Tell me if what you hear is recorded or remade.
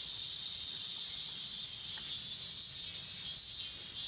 recorded